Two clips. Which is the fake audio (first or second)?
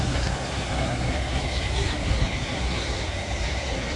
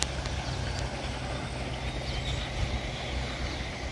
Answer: first